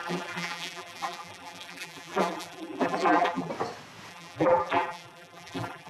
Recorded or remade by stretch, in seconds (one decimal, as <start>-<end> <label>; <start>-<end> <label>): 0.0-3.5 remade; 3.5-4.1 recorded; 4.1-5.9 remade